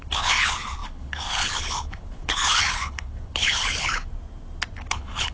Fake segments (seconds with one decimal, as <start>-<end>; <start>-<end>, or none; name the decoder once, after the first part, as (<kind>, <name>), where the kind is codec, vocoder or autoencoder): 0.0-4.1 (codec, HILCodec); 4.8-5.3